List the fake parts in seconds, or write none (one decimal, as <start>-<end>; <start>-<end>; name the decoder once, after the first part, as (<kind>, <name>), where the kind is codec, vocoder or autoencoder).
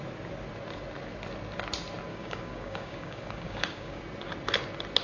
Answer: 2.1-4.0 (codec, DAC)